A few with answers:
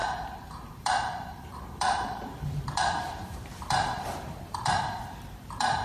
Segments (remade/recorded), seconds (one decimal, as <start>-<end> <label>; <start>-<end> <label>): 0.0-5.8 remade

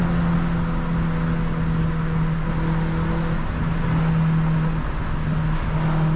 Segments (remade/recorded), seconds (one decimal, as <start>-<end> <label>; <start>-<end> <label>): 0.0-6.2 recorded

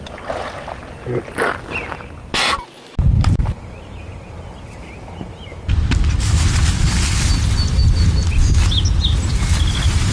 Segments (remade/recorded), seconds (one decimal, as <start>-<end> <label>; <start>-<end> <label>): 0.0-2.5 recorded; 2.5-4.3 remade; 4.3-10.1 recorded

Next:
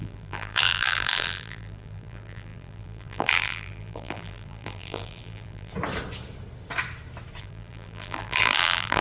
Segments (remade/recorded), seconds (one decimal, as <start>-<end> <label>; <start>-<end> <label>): 0.0-5.7 remade; 5.7-7.4 recorded; 7.4-9.0 remade